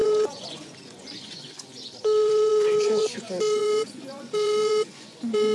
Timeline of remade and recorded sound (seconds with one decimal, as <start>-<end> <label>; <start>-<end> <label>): 0.0-5.5 remade

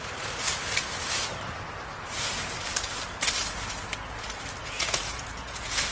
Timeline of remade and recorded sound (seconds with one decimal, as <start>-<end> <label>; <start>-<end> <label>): 0.0-4.6 recorded; 4.6-5.9 remade